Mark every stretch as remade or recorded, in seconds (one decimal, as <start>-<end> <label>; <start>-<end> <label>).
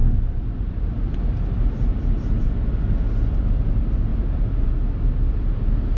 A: 0.0-1.9 recorded; 1.9-2.5 remade; 2.5-4.1 recorded; 4.1-4.7 remade; 4.7-6.0 recorded